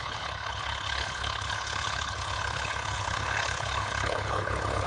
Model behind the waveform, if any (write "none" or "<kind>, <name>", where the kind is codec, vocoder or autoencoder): codec, HILCodec